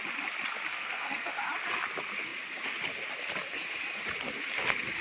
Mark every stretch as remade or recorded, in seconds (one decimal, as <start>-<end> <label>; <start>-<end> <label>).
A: 0.0-0.7 recorded; 0.7-1.3 remade; 1.3-5.0 recorded